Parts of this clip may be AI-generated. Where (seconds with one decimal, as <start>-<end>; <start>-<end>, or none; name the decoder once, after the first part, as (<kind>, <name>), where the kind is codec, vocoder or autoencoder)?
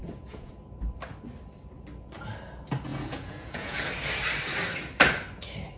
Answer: 0.0-0.5 (vocoder, Vocos); 2.9-3.9